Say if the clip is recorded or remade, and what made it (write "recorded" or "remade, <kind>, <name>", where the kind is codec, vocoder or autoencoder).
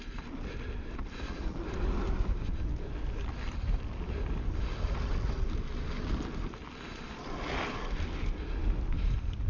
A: recorded